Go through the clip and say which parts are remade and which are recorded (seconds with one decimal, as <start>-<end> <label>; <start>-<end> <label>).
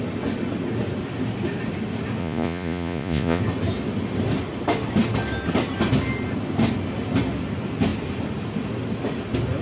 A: 0.0-2.2 recorded; 2.2-3.4 remade; 3.4-9.6 recorded